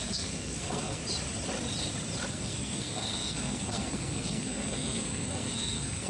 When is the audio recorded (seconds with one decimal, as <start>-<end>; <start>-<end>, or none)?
1.0-2.3